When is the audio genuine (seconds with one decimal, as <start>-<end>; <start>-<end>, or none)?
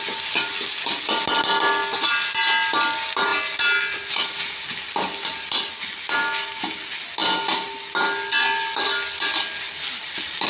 0.0-10.5